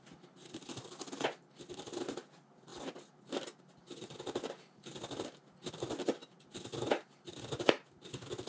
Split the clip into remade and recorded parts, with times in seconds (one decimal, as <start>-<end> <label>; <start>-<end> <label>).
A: 0.0-8.5 recorded